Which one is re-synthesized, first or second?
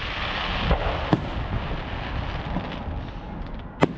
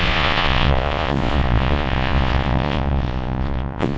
second